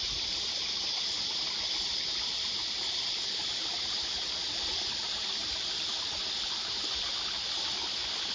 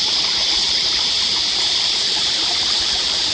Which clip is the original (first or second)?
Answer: first